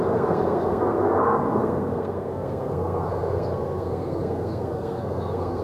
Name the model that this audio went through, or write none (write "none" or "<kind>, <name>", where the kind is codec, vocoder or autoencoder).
codec, SNAC